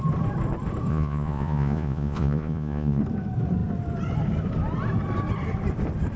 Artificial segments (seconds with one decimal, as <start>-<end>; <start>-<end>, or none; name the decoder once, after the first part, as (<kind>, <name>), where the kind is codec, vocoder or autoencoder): 0.9-3.0 (vocoder, Vocos)